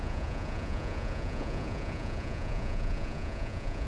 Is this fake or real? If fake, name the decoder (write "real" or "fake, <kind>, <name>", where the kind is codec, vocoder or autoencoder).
fake, vocoder, Vocos